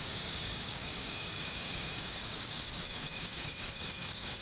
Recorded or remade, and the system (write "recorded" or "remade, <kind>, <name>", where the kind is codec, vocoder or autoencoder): remade, codec, DAC